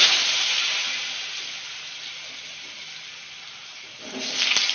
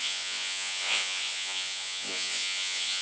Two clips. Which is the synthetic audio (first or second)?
second